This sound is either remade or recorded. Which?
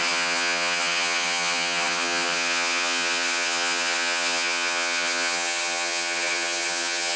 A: remade